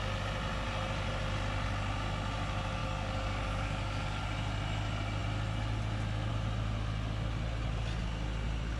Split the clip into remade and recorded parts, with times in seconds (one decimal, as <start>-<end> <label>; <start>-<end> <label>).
0.0-2.8 recorded; 2.8-4.2 remade; 4.2-8.8 recorded